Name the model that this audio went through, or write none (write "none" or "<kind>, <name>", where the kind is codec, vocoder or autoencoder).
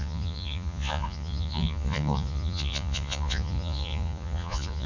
vocoder, Vocos